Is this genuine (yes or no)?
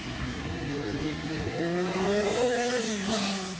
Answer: no